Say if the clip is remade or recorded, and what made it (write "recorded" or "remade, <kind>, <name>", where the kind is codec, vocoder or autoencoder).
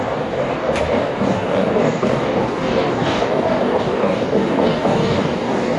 remade, codec, DAC